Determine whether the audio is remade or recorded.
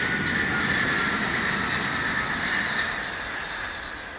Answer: recorded